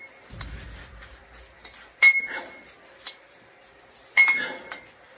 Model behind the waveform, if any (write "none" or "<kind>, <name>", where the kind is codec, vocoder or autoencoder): none